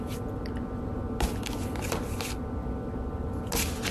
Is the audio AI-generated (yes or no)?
no